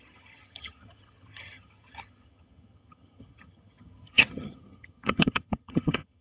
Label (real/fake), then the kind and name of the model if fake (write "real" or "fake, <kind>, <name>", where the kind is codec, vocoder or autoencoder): fake, vocoder, HiFi-GAN